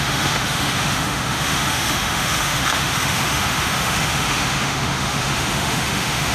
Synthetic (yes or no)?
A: yes